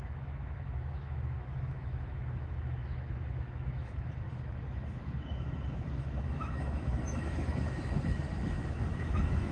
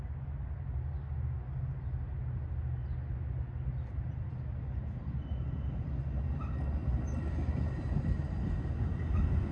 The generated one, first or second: first